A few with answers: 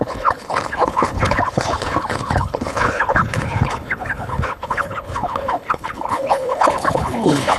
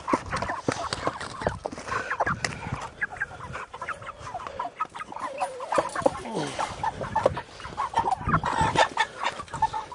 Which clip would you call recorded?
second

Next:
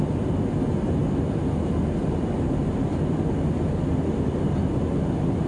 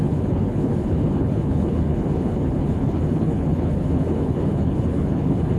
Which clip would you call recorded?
first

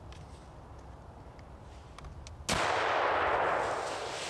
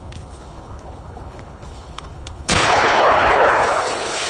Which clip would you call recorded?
first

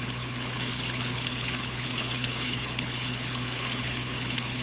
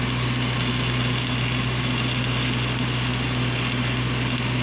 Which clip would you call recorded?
second